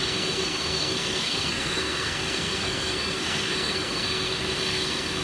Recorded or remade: remade